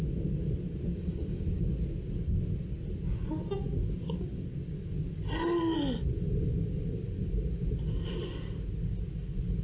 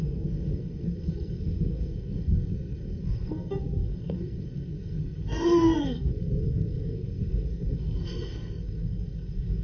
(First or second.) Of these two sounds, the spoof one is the second